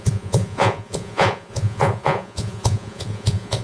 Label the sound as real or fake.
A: fake